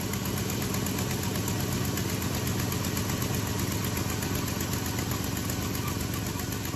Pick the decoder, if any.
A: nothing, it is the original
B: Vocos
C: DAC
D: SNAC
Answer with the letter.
A